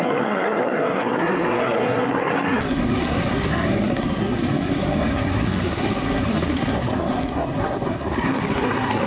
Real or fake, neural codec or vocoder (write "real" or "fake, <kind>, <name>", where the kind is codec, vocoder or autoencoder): fake, codec, SNAC